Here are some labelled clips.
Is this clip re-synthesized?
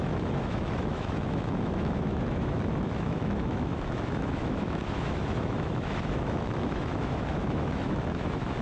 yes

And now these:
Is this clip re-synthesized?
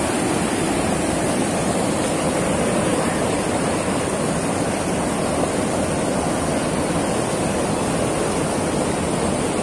no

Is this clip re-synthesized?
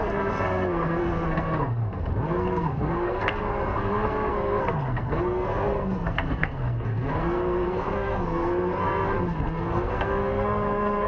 yes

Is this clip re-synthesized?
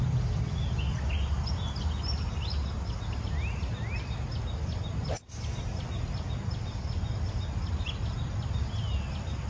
no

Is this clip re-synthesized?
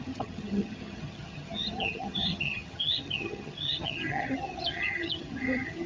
yes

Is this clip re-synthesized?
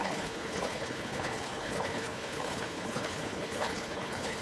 yes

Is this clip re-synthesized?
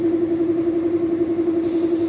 no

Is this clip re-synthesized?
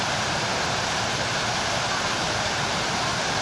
yes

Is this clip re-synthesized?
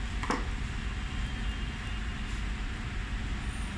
no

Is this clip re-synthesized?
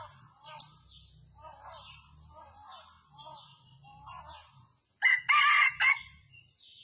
no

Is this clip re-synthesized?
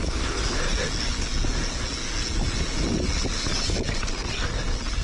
no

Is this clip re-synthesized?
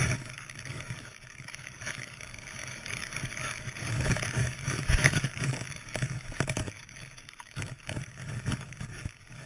yes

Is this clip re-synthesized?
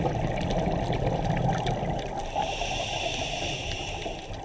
no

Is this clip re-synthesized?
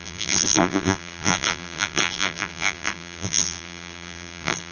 yes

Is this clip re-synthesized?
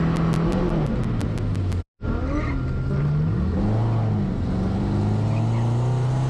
no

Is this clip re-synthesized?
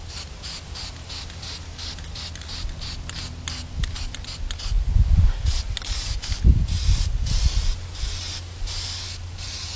no